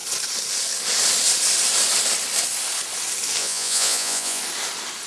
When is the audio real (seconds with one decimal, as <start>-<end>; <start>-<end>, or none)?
0.0-3.4; 4.4-5.1